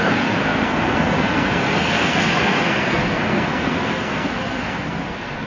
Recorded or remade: remade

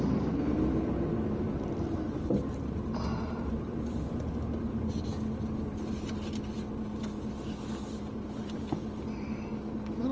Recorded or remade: recorded